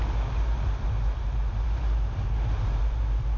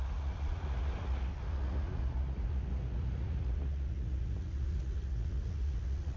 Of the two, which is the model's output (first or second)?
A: second